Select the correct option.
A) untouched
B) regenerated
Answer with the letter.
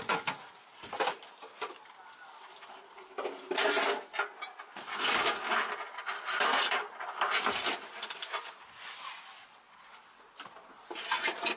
A